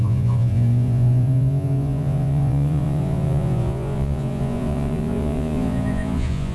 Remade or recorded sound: remade